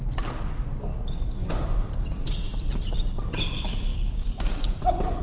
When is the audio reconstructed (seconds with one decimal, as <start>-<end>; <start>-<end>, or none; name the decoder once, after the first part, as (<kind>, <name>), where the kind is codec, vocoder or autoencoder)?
0.9-1.5 (codec, DAC); 3.9-4.8